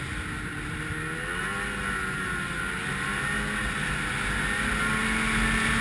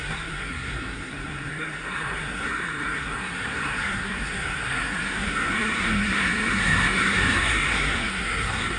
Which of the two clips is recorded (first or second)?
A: first